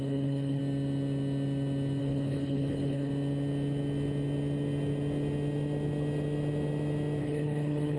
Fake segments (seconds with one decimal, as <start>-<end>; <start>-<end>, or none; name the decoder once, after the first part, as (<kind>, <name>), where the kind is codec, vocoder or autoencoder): 0.0-0.6 (codec, HILCodec); 2.0-3.1; 7.2-8.0